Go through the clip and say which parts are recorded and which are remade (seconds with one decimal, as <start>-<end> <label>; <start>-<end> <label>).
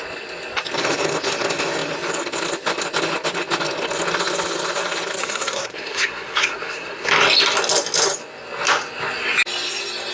0.0-5.2 recorded; 5.2-7.1 remade; 7.1-10.1 recorded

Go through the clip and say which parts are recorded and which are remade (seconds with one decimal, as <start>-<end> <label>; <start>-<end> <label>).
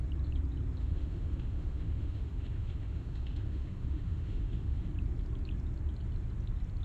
0.0-0.8 recorded; 0.8-4.9 remade; 4.9-6.8 recorded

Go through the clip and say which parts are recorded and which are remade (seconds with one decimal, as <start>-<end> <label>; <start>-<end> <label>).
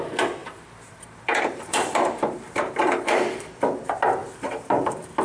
0.0-0.4 recorded; 0.4-3.5 remade; 3.5-5.2 recorded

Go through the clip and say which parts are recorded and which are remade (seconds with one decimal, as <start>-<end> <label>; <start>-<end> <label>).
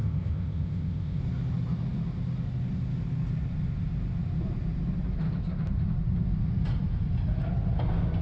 0.0-1.2 remade; 1.2-8.2 recorded